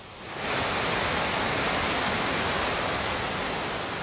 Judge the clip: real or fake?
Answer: real